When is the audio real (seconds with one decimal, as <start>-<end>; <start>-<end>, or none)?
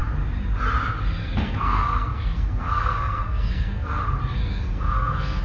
0.0-1.2; 4.0-4.4